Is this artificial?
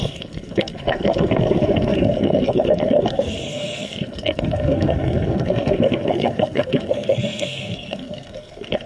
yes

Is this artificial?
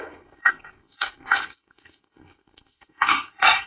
yes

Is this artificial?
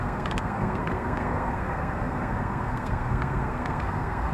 yes